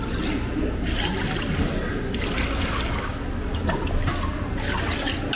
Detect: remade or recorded recorded